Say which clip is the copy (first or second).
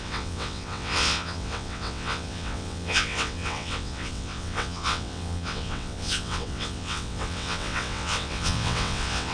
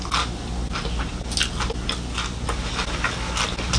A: first